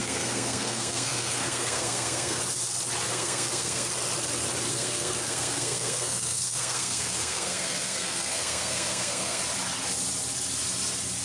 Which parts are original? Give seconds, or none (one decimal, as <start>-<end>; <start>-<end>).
2.4-3.1; 3.9-4.7; 9.4-11.2